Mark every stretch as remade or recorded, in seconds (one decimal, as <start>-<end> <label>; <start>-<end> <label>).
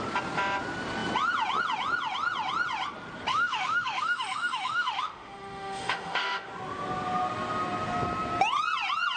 0.0-3.3 recorded; 3.3-6.5 remade; 6.5-9.2 recorded